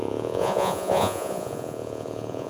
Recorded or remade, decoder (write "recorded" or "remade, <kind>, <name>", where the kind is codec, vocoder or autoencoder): remade, vocoder, Vocos